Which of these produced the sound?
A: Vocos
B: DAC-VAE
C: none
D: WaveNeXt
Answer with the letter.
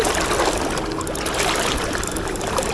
C